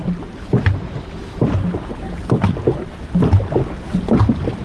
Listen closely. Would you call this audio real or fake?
real